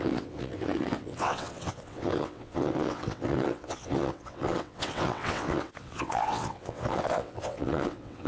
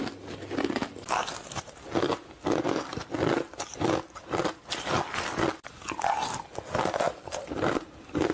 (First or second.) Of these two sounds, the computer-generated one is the first